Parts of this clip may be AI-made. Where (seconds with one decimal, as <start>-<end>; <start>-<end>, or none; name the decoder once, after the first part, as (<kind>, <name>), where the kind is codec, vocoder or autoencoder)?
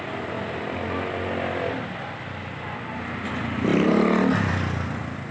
none